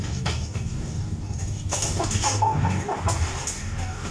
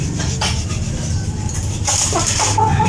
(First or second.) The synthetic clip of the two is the first